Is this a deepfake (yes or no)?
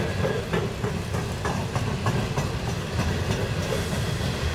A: no